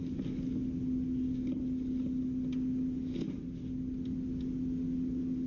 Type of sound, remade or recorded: recorded